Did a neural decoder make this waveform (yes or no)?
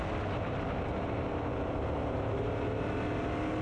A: no